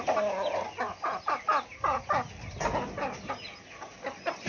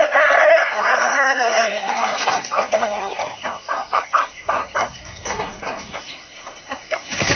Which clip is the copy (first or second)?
second